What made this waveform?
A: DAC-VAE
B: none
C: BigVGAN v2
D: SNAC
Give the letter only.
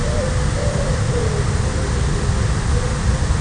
B